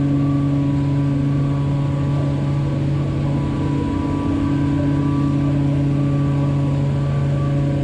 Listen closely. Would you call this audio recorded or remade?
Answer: recorded